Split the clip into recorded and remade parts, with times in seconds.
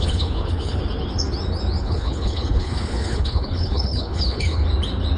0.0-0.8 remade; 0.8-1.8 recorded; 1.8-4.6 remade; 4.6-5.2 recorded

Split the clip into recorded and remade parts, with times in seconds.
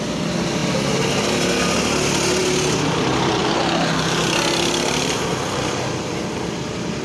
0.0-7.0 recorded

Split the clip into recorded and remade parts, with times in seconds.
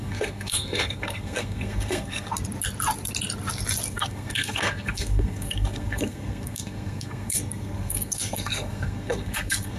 0.0-2.3 remade; 2.3-3.9 recorded; 3.9-9.8 remade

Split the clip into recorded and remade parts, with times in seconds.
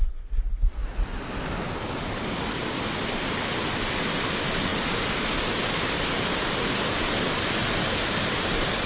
0.0-1.3 recorded; 1.3-4.7 remade; 4.7-5.4 recorded; 5.4-8.9 remade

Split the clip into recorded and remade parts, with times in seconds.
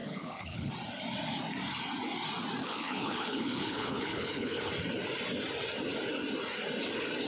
0.0-0.7 remade; 0.7-2.6 recorded; 2.6-4.7 remade; 4.7-7.3 recorded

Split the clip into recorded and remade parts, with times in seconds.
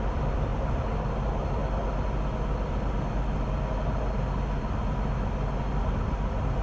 0.0-6.6 recorded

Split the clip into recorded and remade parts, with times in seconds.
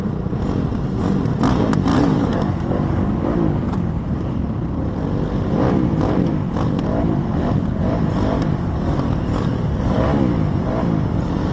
0.0-1.9 recorded; 1.9-4.0 remade; 4.0-9.3 recorded; 9.3-10.0 remade; 10.0-11.5 recorded